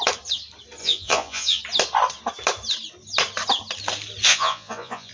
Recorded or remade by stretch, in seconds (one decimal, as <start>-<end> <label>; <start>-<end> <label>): 0.0-0.8 recorded; 0.8-1.6 remade; 1.6-4.3 recorded; 4.3-5.1 remade

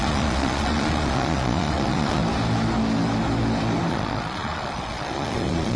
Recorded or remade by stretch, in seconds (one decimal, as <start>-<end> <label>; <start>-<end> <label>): 0.0-2.2 remade; 2.2-3.9 recorded; 3.9-5.8 remade

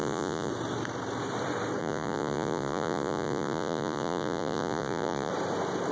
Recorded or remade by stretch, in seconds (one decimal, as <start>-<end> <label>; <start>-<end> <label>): 0.0-0.5 remade; 0.5-1.8 recorded; 1.8-5.3 remade; 5.3-5.9 recorded

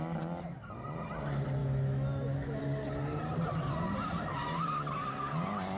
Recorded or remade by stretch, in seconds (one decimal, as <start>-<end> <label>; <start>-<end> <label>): 0.0-1.6 recorded; 1.6-2.6 remade; 2.6-5.8 recorded

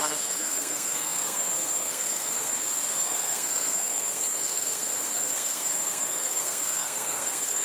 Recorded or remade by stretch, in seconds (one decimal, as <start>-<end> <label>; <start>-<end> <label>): 0.0-7.6 remade

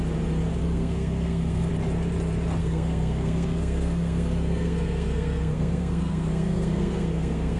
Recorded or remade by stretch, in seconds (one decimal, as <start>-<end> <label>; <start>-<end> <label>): 0.0-0.6 recorded; 0.6-1.7 remade; 1.7-2.6 recorded; 2.6-7.6 remade

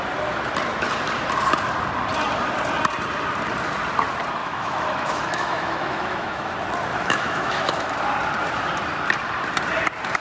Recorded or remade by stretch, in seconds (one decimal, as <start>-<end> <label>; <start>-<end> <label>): 0.0-4.4 recorded; 4.4-6.5 remade; 6.5-6.9 recorded; 6.9-8.0 remade; 8.0-10.2 recorded

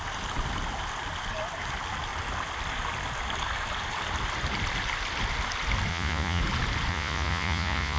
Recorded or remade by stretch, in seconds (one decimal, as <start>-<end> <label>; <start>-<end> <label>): 0.0-5.9 recorded; 5.9-6.4 remade; 6.4-6.9 recorded; 6.9-8.0 remade